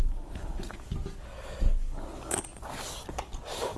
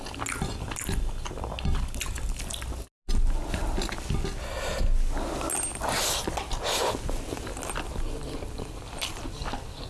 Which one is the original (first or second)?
second